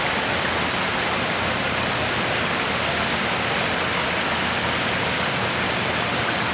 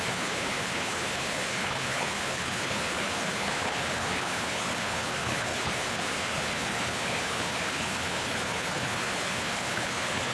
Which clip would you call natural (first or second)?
first